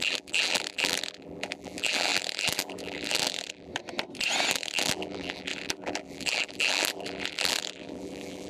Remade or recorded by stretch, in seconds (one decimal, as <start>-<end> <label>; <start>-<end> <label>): 0.0-3.7 remade; 3.7-4.5 recorded; 4.5-8.5 remade